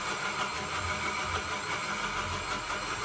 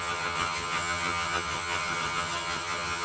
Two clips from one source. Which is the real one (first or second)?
first